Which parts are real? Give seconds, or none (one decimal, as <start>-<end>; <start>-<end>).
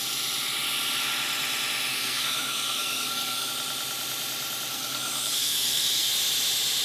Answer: 0.0-1.9; 3.5-4.7; 6.1-6.8